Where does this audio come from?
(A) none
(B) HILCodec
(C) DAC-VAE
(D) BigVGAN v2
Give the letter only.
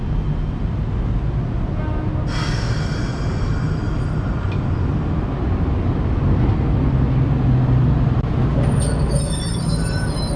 A